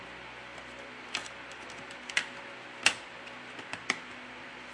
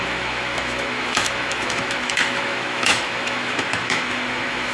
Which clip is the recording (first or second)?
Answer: first